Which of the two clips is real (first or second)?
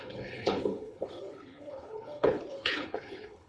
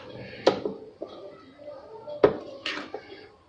second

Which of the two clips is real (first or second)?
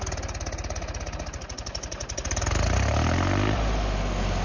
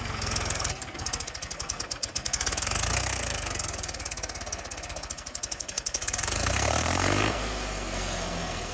first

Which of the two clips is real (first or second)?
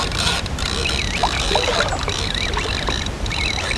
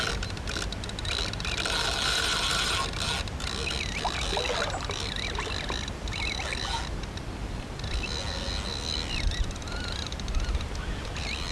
second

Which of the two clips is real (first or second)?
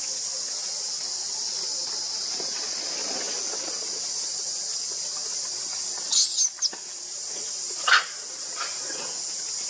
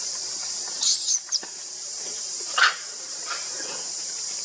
first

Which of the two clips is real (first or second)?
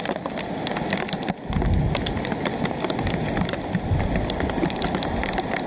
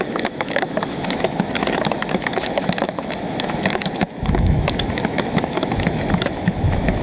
first